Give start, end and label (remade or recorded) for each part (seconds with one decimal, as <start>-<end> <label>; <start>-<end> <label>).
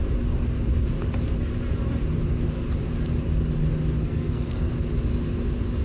0.0-4.0 recorded; 4.0-4.7 remade; 4.7-5.8 recorded